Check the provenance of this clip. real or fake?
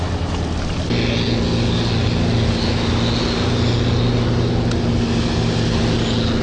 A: real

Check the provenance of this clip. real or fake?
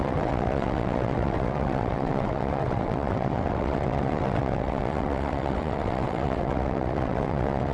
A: fake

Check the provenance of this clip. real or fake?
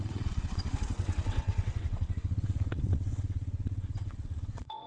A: fake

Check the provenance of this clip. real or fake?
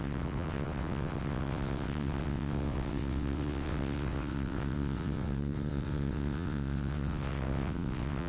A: fake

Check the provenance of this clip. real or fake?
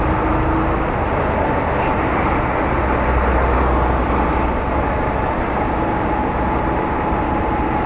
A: real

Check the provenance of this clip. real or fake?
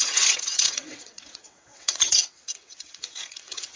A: fake